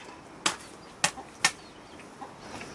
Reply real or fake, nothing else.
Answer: real